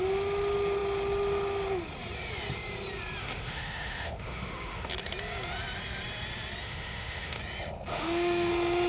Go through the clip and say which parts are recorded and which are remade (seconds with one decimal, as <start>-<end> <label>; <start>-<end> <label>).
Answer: 0.0-3.2 recorded; 3.2-4.9 remade; 4.9-6.6 recorded; 6.6-7.4 remade; 7.4-7.9 recorded; 7.9-8.5 remade; 8.5-8.9 recorded